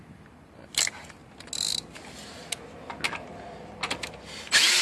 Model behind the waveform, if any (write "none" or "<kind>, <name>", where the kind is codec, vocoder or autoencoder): none